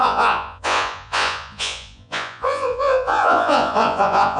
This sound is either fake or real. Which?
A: fake